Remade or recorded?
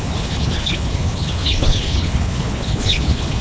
remade